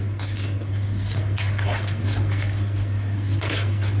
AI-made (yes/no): yes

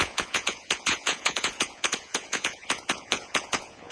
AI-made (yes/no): yes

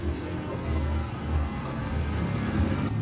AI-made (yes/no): yes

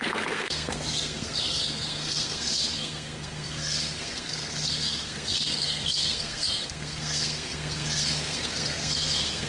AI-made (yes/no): yes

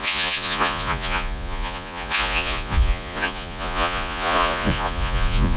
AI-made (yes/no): yes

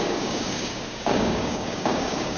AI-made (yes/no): yes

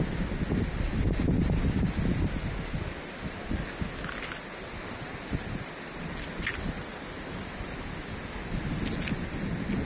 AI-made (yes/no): no